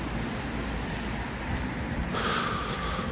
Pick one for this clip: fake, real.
real